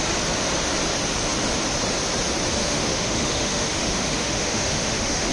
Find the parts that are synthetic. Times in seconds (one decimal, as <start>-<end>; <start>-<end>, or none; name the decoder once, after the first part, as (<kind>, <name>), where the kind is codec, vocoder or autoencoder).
2.6-5.3 (autoencoder, DAC-VAE)